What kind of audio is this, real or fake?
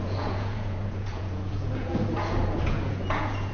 fake